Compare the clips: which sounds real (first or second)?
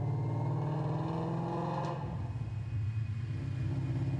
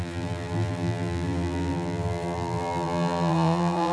first